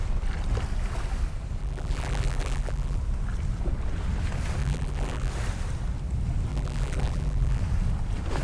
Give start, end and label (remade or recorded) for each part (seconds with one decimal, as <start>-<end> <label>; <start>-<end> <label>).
0.0-1.6 recorded; 1.6-3.0 remade; 3.0-4.6 recorded; 4.6-5.3 remade; 5.3-6.5 recorded; 6.5-7.6 remade; 7.6-8.4 recorded